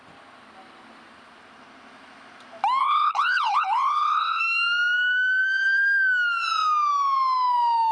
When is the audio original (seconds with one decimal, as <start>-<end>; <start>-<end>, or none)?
0.0-2.8; 4.4-7.9